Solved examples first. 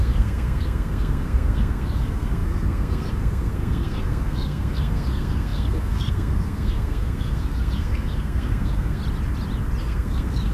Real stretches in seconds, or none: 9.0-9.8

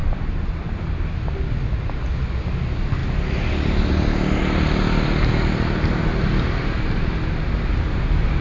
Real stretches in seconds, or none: 0.0-8.4

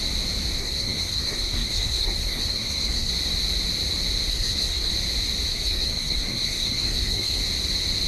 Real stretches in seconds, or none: 0.0-0.6; 3.1-4.3; 4.9-5.5; 7.4-8.1

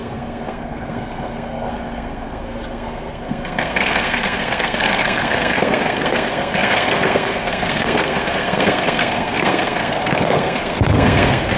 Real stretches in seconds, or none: none

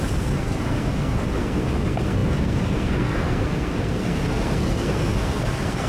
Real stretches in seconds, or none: none

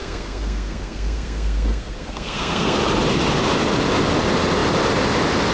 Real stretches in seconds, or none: 2.8-5.5

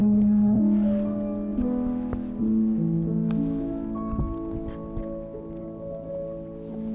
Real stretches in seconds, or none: 0.6-6.9